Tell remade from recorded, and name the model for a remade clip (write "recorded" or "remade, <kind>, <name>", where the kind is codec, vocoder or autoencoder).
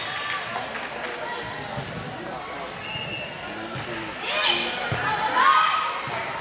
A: recorded